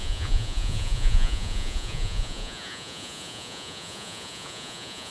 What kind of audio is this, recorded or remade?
remade